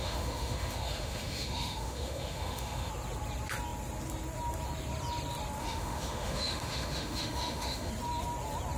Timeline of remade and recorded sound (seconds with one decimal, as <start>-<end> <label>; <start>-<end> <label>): 0.0-2.9 remade; 2.9-5.6 recorded; 5.6-7.9 remade; 7.9-8.8 recorded